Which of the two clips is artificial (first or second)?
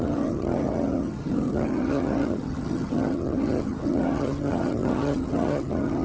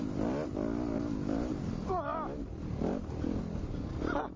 first